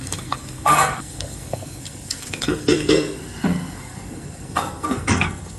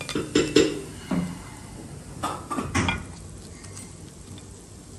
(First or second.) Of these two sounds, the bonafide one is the second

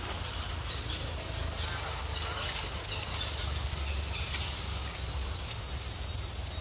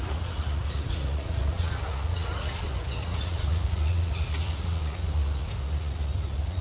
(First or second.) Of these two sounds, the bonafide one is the first